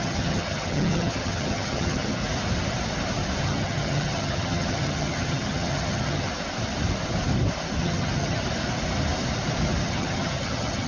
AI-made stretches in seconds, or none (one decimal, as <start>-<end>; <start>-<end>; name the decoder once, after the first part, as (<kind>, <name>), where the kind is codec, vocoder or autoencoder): 0.0-2.2 (vocoder, HiFi-GAN); 3.4-6.3; 7.8-8.4; 9.8-10.9